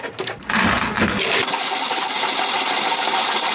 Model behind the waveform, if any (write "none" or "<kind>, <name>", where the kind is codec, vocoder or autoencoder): none